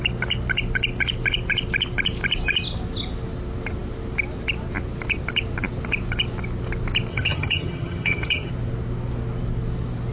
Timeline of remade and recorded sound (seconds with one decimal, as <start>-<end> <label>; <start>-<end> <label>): 0.0-7.1 recorded; 7.1-8.5 remade; 8.5-10.1 recorded